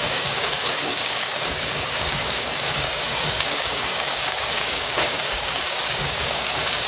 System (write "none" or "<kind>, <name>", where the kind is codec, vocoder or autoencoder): codec, DAC